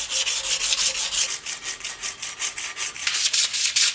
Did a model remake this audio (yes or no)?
no